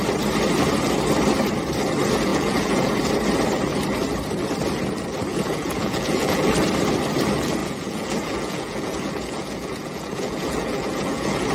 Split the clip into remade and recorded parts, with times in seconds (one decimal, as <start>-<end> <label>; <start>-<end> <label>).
0.0-2.3 recorded; 2.3-2.9 remade; 2.9-5.3 recorded; 5.3-6.5 remade; 6.5-7.6 recorded; 7.6-11.5 remade